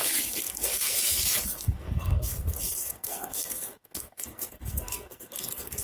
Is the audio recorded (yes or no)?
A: no